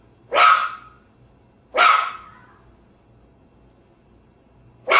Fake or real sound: real